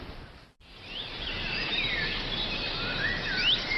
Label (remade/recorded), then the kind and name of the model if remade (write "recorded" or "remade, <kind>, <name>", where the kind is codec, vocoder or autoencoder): recorded